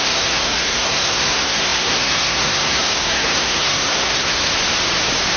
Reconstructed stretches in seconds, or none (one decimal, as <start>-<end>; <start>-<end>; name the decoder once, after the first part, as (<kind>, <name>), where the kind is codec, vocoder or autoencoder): 0.0-4.5 (codec, SNAC)